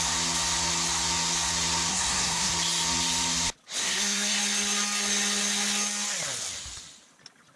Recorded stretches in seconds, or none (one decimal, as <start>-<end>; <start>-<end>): 0.0-1.9; 2.5-3.8; 4.4-7.6